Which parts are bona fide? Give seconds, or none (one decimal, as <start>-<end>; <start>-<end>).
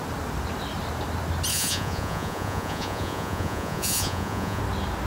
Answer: 0.0-1.5; 4.6-5.1